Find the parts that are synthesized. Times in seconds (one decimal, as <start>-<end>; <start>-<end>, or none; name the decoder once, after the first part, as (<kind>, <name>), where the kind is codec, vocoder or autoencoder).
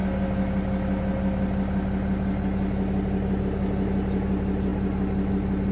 none